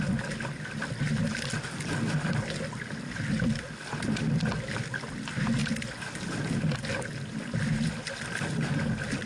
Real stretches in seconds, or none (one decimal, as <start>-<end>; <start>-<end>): 0.0-9.3